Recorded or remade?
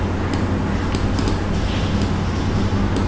recorded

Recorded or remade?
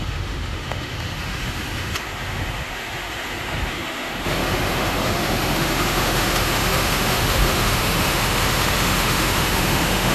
remade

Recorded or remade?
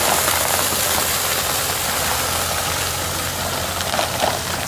recorded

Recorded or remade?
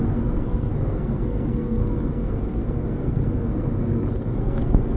remade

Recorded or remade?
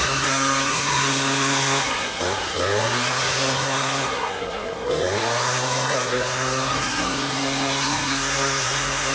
remade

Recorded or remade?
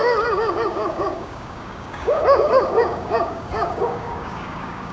remade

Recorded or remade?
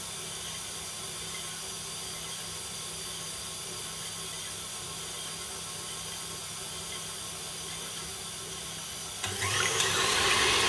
recorded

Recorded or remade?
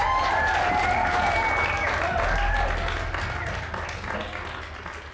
recorded